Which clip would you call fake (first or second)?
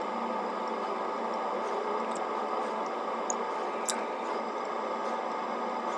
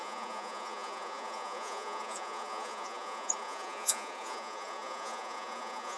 second